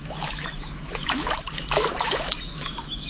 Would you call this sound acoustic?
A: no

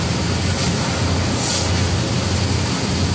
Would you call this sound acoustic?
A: yes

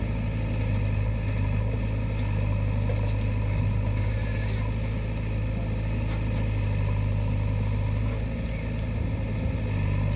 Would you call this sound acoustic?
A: yes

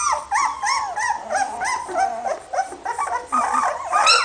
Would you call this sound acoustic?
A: yes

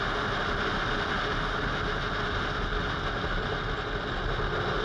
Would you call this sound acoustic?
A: yes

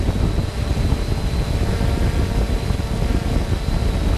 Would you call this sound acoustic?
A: yes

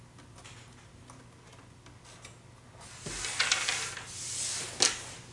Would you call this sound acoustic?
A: yes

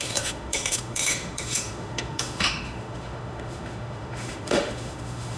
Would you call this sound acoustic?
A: no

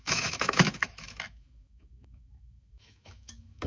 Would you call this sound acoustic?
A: no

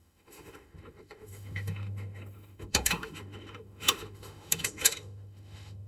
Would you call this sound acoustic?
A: no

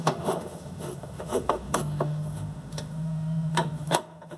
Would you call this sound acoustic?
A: no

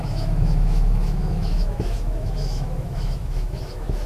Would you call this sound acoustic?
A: no